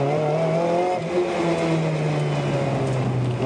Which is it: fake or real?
real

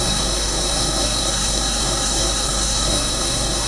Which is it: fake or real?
fake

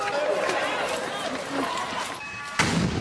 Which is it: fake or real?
real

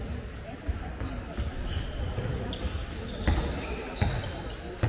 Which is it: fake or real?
real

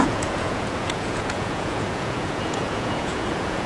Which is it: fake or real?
fake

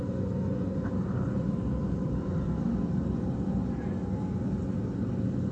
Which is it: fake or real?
real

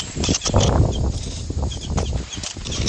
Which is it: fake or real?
fake